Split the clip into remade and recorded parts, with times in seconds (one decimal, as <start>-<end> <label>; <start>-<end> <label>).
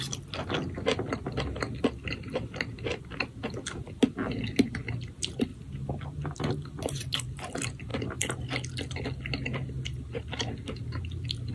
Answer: 0.0-11.5 recorded